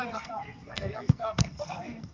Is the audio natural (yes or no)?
no